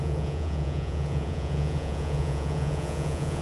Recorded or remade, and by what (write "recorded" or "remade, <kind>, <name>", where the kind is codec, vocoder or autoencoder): remade, vocoder, Vocos